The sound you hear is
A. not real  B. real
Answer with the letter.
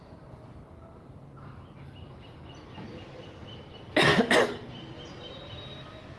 B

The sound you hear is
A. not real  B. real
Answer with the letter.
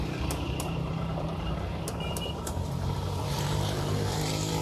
A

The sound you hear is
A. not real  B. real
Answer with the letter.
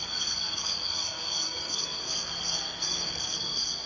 A